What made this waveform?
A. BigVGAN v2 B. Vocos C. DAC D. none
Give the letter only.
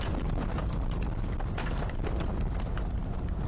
A